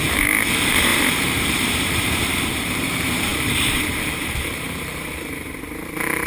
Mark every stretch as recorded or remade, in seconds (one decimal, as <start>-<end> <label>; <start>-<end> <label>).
0.0-6.3 remade